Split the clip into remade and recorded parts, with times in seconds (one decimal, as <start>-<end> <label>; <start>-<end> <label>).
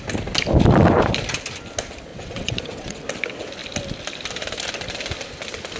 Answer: 0.0-2.1 recorded; 2.1-3.0 remade; 3.0-5.8 recorded